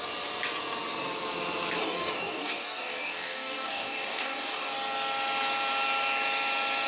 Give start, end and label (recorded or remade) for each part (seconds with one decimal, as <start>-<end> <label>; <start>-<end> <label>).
0.0-1.8 recorded; 1.8-4.7 remade; 4.7-6.9 recorded